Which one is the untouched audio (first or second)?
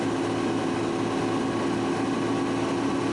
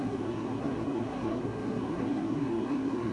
first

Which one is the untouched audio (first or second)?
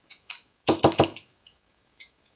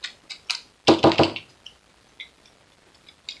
second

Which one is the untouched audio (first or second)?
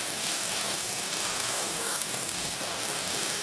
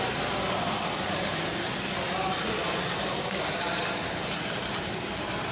second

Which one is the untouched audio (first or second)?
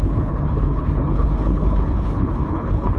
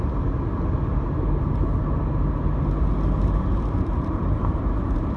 second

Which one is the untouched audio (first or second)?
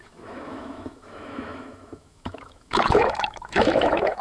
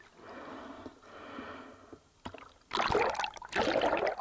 second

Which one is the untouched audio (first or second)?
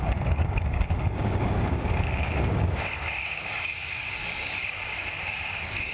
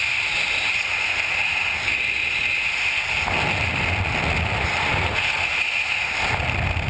second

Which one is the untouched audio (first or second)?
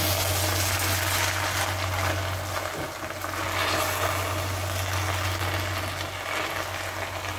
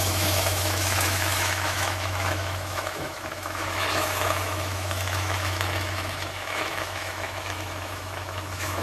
first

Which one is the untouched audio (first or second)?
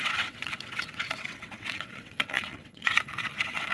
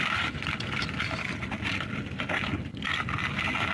second